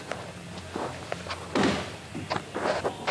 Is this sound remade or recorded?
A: recorded